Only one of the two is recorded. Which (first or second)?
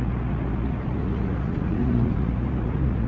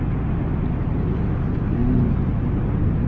second